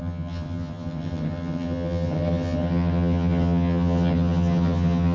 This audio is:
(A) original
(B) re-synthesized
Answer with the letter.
B